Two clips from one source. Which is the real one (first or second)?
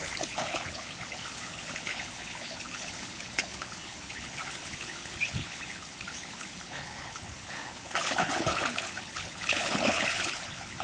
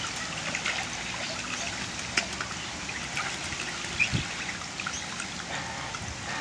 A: second